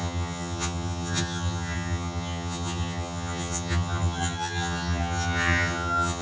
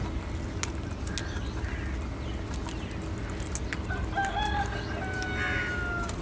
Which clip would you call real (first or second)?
second